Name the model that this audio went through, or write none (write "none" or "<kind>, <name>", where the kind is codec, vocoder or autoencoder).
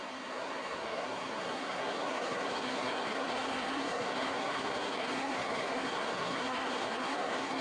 codec, SNAC